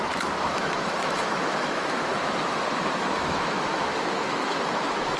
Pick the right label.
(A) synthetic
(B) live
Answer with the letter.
A